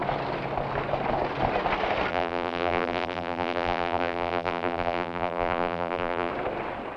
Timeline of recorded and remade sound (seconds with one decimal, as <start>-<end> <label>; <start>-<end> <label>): 0.0-2.1 recorded; 2.1-6.3 remade; 6.3-7.0 recorded